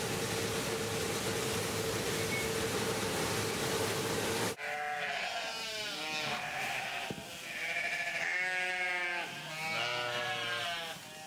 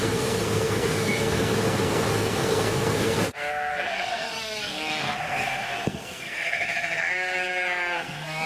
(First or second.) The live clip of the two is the first